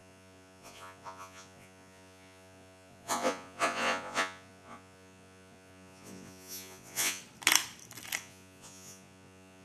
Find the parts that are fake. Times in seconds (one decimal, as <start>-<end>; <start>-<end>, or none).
0.0-7.2; 8.2-9.6